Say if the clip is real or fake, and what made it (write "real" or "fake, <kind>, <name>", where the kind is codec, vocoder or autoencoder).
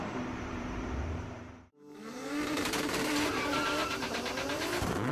fake, vocoder, BigVGAN v2